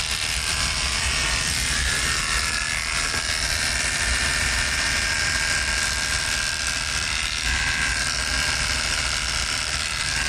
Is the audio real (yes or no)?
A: no